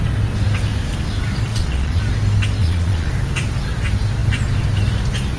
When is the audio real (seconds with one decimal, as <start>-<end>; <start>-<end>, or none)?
0.0-1.5; 2.0-2.6; 3.1-5.4